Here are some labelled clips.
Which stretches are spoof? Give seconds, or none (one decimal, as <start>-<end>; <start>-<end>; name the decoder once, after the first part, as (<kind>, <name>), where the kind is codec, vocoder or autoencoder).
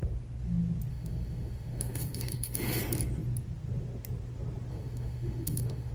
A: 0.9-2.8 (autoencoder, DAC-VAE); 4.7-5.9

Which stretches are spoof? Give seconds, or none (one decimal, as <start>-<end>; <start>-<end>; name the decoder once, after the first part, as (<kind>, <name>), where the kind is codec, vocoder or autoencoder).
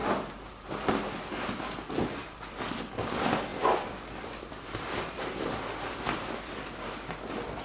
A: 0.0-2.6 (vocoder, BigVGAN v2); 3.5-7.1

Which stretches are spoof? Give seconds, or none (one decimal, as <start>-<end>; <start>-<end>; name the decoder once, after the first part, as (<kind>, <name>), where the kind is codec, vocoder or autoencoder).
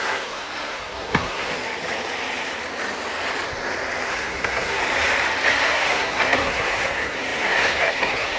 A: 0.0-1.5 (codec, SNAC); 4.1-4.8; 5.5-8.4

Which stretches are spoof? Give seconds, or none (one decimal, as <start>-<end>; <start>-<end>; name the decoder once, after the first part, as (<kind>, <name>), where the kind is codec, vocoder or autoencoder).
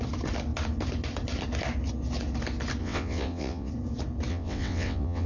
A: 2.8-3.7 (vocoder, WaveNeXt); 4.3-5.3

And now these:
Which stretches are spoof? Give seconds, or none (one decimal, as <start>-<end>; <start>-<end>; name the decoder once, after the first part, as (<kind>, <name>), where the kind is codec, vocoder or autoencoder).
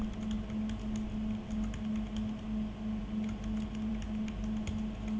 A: none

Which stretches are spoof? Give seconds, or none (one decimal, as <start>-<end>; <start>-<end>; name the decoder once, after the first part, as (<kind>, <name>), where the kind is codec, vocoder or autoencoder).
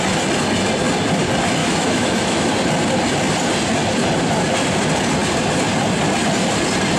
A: 1.6-2.5 (autoencoder, DAC-VAE)